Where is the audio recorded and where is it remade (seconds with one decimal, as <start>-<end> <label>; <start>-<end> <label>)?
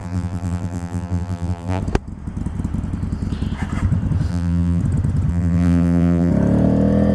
0.0-1.8 remade; 1.8-4.3 recorded; 4.3-4.8 remade; 4.8-5.3 recorded; 5.3-6.3 remade; 6.3-7.1 recorded